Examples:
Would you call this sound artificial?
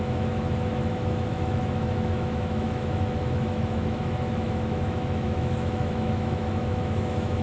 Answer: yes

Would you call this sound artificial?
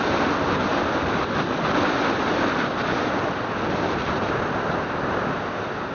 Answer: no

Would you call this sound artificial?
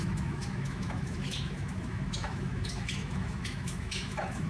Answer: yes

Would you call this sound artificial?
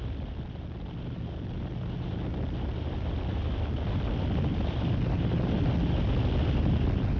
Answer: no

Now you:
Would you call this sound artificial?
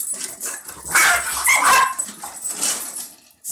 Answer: no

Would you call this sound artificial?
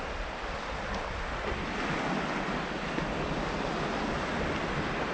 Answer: no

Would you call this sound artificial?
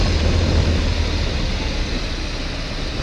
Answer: no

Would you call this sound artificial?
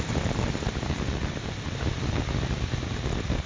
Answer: no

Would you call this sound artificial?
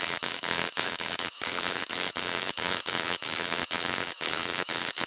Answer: yes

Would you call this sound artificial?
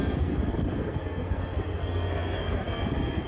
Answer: yes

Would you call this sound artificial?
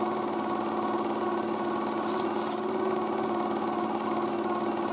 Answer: no